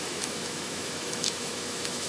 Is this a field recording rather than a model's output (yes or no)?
no